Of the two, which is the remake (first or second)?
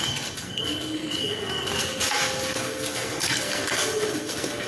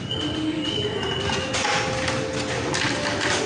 first